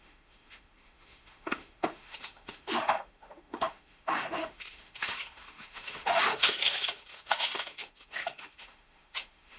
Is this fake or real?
fake